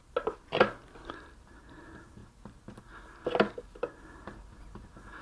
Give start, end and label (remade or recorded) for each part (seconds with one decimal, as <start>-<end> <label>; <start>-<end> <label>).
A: 0.0-5.2 recorded